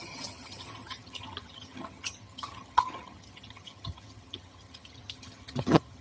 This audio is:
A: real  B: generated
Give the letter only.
B